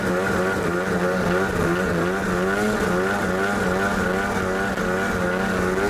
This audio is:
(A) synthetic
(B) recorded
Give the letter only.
B